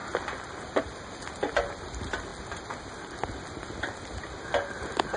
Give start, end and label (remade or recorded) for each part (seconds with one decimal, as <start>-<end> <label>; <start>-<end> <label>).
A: 0.0-5.2 recorded